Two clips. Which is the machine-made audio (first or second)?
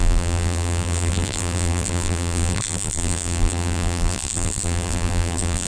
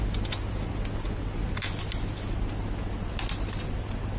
first